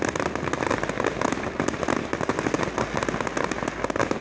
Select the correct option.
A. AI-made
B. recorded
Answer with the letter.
B